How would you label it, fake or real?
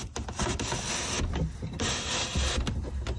real